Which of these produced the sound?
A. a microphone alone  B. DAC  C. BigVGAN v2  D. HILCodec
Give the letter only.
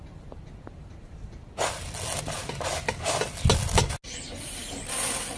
A